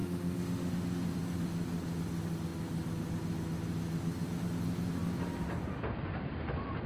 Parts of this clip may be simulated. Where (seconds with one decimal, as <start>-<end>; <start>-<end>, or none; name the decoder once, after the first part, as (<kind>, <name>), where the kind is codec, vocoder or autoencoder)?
0.0-0.7 (autoencoder, DAC-VAE)

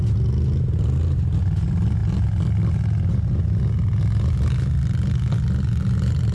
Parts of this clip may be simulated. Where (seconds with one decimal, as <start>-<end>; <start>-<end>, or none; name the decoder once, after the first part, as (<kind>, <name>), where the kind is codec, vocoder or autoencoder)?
none

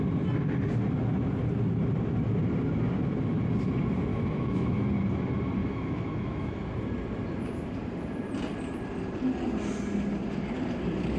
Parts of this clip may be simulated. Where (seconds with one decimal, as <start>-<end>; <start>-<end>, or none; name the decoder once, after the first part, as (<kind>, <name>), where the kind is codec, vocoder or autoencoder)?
4.1-4.9 (autoencoder, DAC-VAE); 5.6-6.6

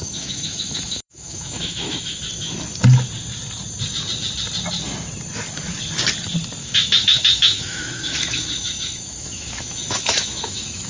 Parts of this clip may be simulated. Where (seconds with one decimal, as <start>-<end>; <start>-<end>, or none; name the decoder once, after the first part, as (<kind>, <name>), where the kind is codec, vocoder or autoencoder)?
0.0-2.2 (autoencoder, DAC-VAE); 6.6-10.9

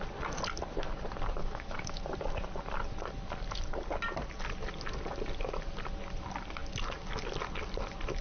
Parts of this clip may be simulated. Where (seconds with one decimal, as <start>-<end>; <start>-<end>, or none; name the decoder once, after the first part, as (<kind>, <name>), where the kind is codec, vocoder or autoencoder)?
1.4-2.0 (autoencoder, DAC-VAE)

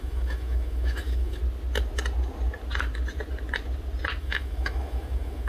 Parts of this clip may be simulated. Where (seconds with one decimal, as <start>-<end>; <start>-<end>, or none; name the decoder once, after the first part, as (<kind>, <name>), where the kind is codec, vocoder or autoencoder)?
0.0-1.4 (autoencoder, DAC-VAE); 4.2-5.5

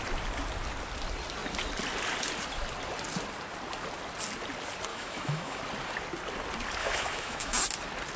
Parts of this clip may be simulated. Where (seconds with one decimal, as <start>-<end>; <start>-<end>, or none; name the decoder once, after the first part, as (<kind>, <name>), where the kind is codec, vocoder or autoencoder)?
4.9-5.6 (autoencoder, DAC-VAE); 6.8-7.6

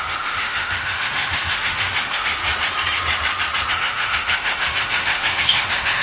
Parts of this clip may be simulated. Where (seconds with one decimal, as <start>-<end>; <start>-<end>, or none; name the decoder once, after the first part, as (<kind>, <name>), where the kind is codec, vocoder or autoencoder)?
0.0-2.4 (autoencoder, DAC-VAE); 3.7-6.0